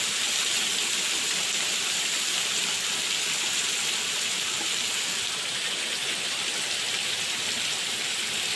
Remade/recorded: remade